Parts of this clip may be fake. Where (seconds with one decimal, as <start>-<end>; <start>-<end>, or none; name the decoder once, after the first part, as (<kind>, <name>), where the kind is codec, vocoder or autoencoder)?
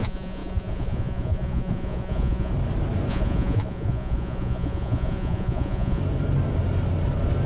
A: 0.0-2.5 (vocoder, Vocos); 3.1-6.0